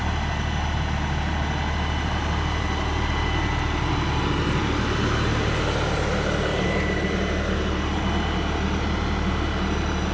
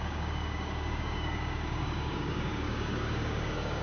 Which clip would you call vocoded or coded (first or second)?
second